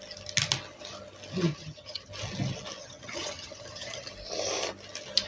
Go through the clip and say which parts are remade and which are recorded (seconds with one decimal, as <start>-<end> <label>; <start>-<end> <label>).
0.0-1.5 recorded; 1.5-2.1 remade; 2.1-2.8 recorded; 2.8-4.1 remade; 4.1-5.3 recorded